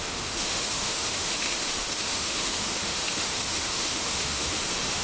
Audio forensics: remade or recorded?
remade